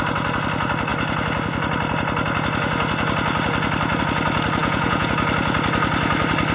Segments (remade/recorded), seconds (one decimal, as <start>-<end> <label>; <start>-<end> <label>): 0.0-4.6 recorded; 4.6-5.1 remade; 5.1-6.5 recorded